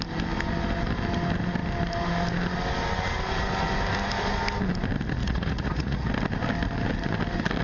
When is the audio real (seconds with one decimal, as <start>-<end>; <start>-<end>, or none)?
0.0-5.2; 6.1-7.6